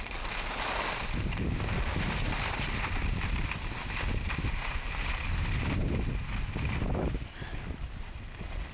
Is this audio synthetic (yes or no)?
no